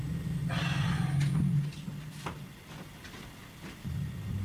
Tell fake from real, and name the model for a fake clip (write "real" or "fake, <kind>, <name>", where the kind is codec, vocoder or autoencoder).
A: real